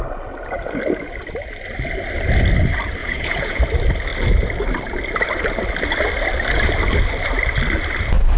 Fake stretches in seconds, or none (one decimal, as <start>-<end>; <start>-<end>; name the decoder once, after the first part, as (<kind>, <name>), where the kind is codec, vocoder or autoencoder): 3.0-3.6 (vocoder, Vocos)